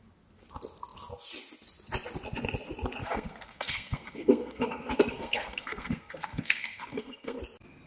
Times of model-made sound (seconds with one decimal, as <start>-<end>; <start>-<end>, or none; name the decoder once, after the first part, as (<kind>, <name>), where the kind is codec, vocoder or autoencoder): 3.0-7.4 (codec, SNAC)